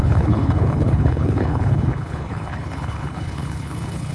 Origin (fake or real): fake